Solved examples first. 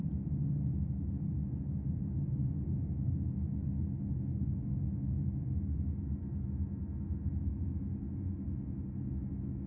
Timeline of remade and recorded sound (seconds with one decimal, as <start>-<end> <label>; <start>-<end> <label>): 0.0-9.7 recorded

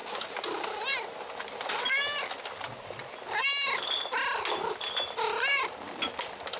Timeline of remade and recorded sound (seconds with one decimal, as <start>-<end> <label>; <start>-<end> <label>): 0.0-6.6 recorded

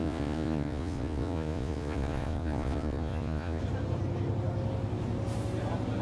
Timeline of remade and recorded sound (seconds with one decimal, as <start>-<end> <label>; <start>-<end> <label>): 0.0-3.6 remade; 3.6-6.0 recorded